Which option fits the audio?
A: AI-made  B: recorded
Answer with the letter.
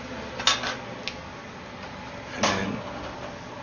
B